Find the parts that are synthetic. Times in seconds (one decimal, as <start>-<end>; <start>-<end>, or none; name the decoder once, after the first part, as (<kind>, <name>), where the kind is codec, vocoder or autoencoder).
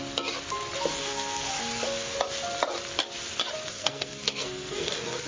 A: 0.9-1.5 (codec, SNAC); 3.7-5.3